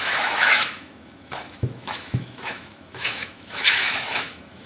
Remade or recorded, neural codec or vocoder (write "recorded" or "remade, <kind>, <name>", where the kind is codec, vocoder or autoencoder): remade, autoencoder, DAC-VAE